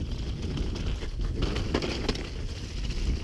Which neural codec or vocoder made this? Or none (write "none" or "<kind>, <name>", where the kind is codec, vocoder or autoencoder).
none